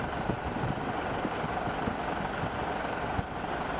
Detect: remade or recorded recorded